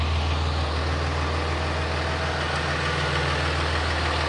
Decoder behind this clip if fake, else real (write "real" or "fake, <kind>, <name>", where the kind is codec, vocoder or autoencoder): real